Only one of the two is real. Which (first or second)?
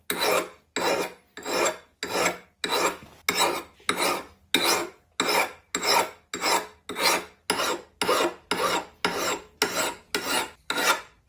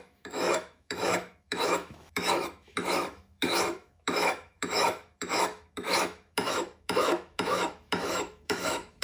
first